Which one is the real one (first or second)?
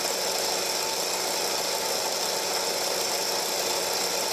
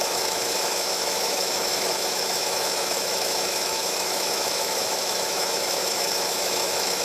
first